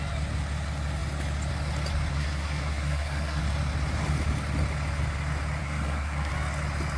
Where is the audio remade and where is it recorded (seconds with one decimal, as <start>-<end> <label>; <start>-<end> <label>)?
0.0-2.1 recorded; 2.1-3.4 remade; 3.4-5.6 recorded; 5.6-6.3 remade; 6.3-7.0 recorded